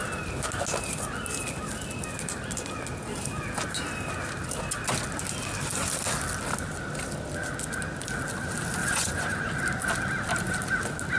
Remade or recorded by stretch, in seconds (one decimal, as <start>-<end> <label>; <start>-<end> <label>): 0.0-8.8 recorded; 8.8-9.5 remade; 9.5-11.2 recorded